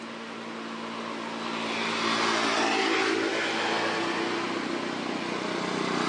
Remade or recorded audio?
recorded